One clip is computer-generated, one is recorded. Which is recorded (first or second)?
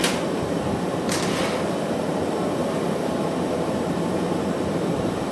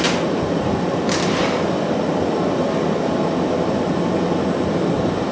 second